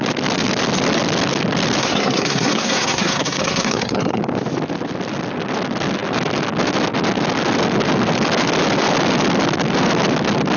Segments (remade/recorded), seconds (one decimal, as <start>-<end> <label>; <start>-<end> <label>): 0.0-1.8 recorded; 1.8-4.2 remade; 4.2-10.6 recorded